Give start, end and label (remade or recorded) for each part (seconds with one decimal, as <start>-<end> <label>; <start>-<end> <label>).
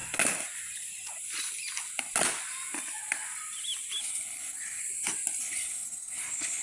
0.0-4.0 recorded; 4.0-4.8 remade; 4.8-5.4 recorded; 5.4-6.6 remade